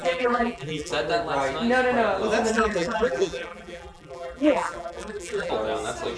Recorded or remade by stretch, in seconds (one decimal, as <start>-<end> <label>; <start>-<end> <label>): 0.0-0.9 remade; 0.9-2.5 recorded; 2.5-5.5 remade; 5.5-6.2 recorded